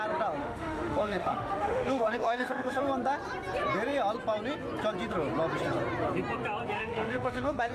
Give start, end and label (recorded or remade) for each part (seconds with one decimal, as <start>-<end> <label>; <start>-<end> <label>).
0.0-0.4 recorded; 0.4-2.8 remade; 2.8-6.8 recorded; 6.8-7.7 remade